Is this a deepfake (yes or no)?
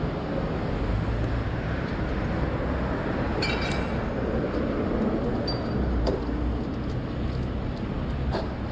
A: no